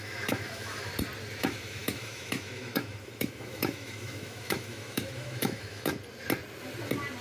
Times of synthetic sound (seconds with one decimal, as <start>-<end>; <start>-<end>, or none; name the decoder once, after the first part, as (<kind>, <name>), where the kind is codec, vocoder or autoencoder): 0.0-0.9 (autoencoder, DAC-VAE); 1.4-5.9